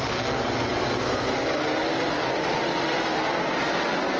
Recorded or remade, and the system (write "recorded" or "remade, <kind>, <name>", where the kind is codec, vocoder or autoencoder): recorded